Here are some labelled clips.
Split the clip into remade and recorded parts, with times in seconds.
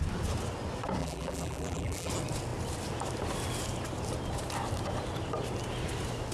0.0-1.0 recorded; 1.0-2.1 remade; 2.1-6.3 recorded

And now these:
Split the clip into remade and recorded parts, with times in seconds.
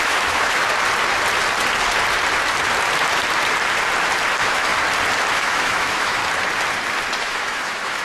0.0-0.6 remade; 0.6-4.3 recorded; 4.3-4.7 remade; 4.7-5.3 recorded; 5.3-6.2 remade; 6.2-7.2 recorded; 7.2-8.0 remade